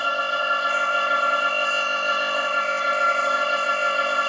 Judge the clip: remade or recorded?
remade